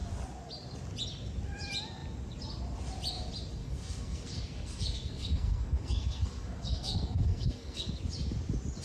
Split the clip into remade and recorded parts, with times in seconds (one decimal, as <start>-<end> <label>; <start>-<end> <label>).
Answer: 0.0-3.6 recorded; 3.6-7.9 remade; 7.9-8.8 recorded